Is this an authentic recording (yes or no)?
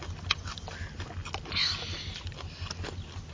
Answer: yes